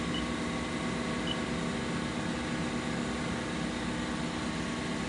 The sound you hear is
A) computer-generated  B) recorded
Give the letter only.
B